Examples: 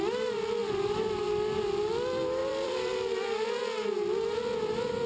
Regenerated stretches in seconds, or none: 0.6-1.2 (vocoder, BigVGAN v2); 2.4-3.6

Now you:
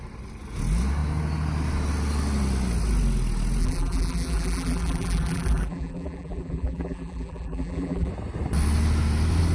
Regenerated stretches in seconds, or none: 3.6-8.1 (vocoder, BigVGAN v2)